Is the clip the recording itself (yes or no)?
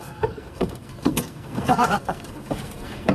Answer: no